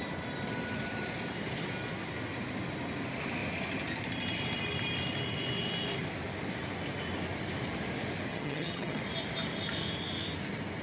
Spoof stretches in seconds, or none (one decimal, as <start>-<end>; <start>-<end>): 8.3-9.0